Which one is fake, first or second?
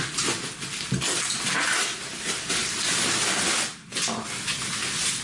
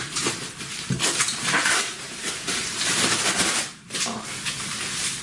second